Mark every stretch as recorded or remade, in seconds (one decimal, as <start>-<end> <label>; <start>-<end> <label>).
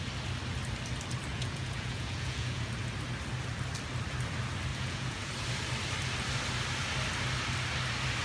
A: 0.0-1.3 recorded; 1.3-2.7 remade; 2.7-4.7 recorded; 4.7-5.3 remade; 5.3-8.2 recorded